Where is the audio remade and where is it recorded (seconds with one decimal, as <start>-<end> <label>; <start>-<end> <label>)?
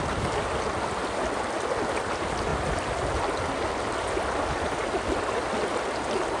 0.0-6.4 recorded